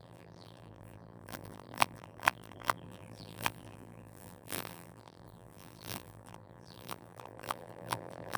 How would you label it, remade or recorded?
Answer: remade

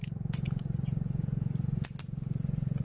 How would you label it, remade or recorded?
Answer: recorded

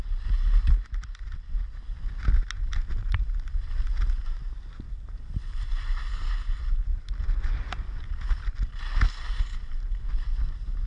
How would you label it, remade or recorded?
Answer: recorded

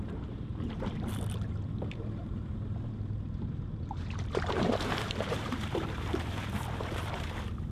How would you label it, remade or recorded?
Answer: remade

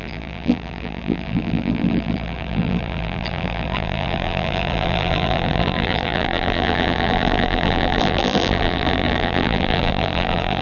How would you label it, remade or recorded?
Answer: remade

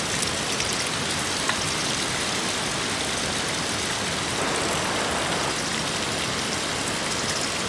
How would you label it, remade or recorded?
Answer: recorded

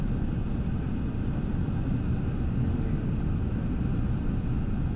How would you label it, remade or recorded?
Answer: recorded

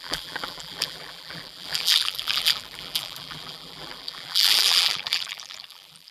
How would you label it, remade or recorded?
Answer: remade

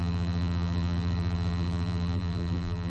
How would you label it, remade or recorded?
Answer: remade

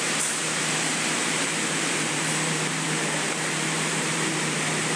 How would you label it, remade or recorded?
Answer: remade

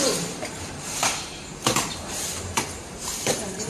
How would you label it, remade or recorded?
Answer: remade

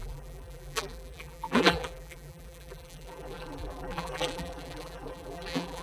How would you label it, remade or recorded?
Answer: remade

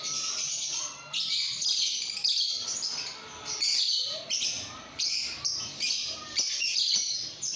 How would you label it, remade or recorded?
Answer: recorded